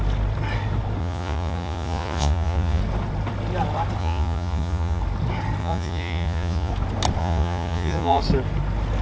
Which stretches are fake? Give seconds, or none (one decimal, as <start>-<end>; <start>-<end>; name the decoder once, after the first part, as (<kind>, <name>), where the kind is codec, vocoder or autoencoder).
1.0-2.8 (vocoder, Vocos); 4.0-5.0; 5.6-6.7; 7.2-8.2